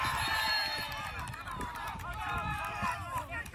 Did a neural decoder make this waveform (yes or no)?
no